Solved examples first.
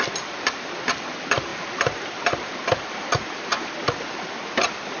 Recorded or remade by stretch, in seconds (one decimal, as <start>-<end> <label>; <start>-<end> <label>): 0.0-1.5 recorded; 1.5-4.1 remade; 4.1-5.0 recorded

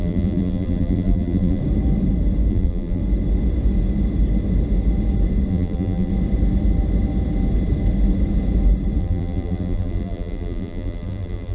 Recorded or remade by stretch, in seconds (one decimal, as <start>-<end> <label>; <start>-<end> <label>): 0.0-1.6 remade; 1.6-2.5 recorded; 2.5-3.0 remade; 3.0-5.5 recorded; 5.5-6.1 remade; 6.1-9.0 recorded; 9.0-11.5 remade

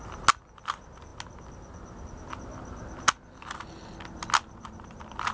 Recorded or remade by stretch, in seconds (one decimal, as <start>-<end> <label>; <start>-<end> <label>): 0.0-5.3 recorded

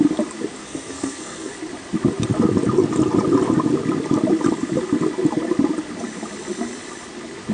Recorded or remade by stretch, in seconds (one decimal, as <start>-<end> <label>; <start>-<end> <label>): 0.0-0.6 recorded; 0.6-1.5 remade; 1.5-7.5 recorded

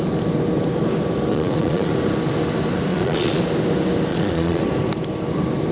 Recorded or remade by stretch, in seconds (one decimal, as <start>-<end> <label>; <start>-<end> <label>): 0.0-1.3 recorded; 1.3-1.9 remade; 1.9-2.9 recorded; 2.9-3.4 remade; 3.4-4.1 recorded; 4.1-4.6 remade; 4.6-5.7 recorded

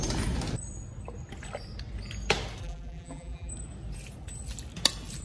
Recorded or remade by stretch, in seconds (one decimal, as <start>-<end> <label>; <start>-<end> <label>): 0.0-2.6 recorded; 2.6-3.5 remade; 3.5-5.2 recorded

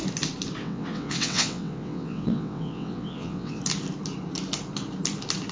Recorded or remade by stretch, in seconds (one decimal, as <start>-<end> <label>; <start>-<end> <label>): 0.0-0.6 recorded; 0.6-3.6 remade; 3.6-5.5 recorded